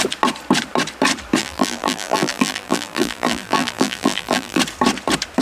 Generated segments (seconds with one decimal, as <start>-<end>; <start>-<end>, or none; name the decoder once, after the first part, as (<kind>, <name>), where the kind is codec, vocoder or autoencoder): 1.4-4.6 (vocoder, BigVGAN v2)